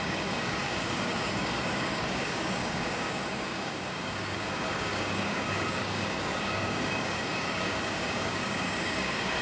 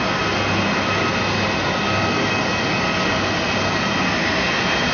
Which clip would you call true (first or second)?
second